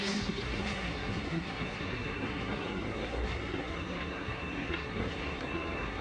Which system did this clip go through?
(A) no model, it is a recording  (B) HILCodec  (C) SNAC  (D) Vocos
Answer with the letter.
C